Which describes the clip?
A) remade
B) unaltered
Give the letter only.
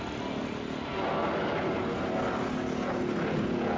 B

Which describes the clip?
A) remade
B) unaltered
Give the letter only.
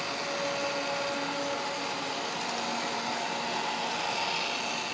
B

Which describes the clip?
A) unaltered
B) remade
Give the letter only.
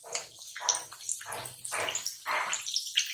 A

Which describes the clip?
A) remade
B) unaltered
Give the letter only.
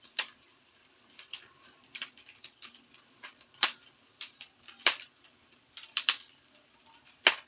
A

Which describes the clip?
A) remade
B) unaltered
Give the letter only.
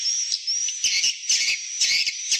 B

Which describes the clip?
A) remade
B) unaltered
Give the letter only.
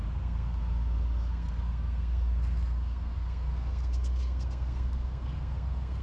A